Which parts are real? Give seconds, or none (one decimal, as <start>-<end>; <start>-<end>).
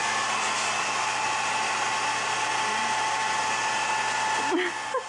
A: 0.0-5.1